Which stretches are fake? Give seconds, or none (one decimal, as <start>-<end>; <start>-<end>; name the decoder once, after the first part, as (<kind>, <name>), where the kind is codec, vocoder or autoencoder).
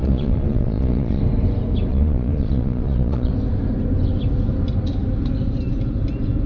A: 0.0-1.2 (vocoder, Vocos); 1.9-3.3